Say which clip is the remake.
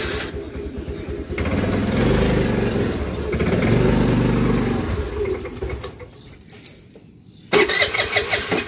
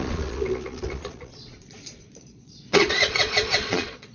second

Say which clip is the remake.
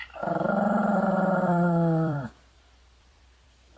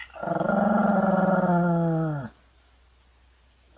first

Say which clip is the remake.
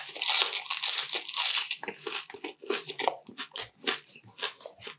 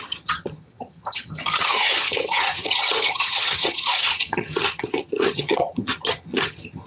second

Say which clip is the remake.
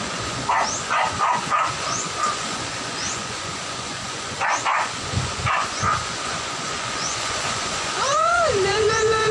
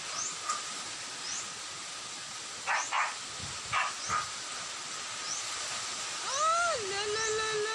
first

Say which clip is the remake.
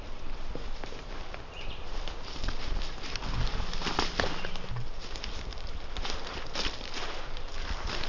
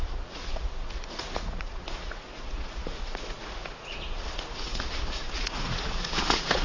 second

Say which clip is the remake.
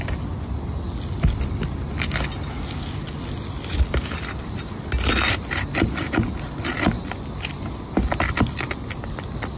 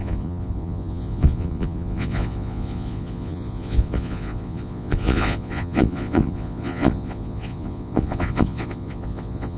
second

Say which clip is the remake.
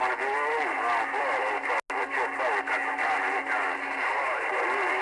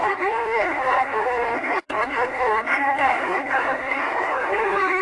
second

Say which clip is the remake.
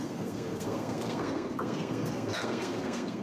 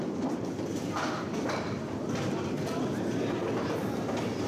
first